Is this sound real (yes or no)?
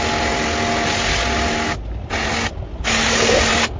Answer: yes